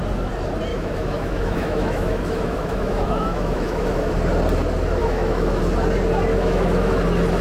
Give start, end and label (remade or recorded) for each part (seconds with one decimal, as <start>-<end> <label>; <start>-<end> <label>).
0.0-0.7 recorded; 0.7-4.1 remade; 4.1-5.0 recorded; 5.0-5.6 remade; 5.6-6.3 recorded; 6.3-7.0 remade; 7.0-7.4 recorded